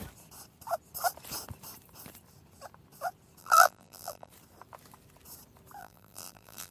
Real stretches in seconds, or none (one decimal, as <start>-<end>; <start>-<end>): 0.0-3.4; 4.3-5.8